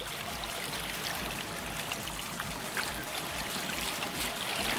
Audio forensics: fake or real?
real